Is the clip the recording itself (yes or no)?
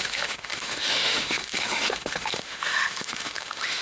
no